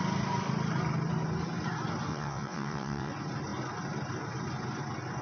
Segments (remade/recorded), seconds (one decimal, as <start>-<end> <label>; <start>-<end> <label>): 0.0-2.1 recorded; 2.1-3.1 remade; 3.1-5.2 recorded